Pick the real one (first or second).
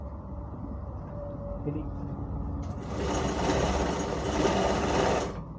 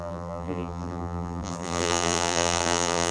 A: first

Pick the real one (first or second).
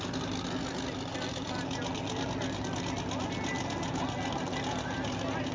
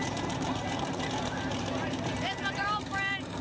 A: first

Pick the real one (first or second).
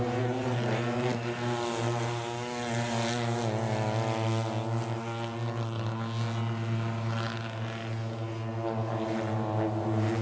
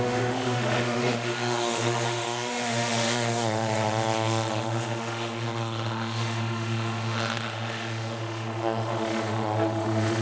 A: first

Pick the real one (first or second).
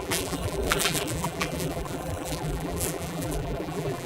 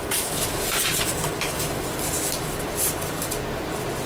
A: second